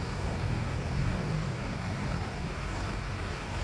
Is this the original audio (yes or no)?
no